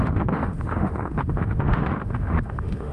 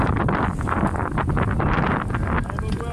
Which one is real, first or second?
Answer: second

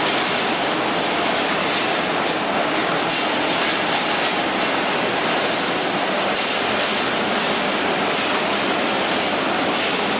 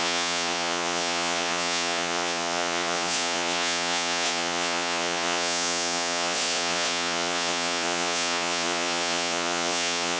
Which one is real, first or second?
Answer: first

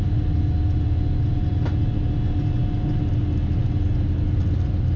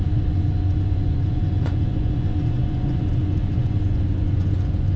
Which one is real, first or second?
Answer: first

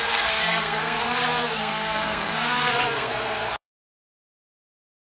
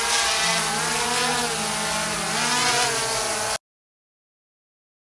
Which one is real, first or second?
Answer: second